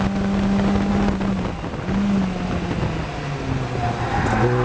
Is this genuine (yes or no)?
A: yes